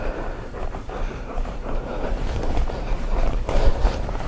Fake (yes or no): yes